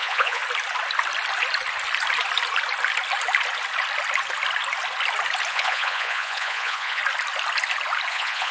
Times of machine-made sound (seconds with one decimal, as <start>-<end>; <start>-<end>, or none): 0.0-0.4; 5.5-7.0; 8.1-8.5